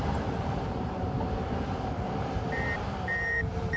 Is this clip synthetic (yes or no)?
yes